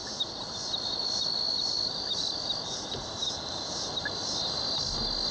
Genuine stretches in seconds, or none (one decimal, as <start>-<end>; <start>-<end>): 0.0-5.3